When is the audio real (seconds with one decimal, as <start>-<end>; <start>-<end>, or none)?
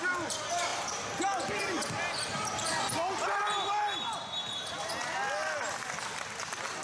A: 0.0-6.8